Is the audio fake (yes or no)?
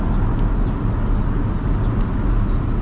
no